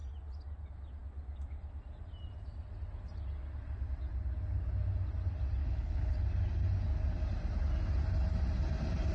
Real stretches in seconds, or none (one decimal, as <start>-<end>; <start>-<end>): 0.0-5.6; 6.1-9.1